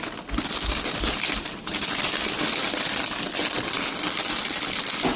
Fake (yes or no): no